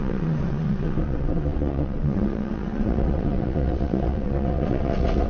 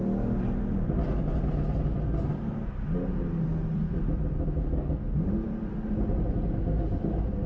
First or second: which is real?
second